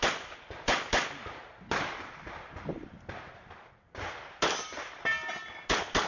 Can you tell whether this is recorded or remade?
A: recorded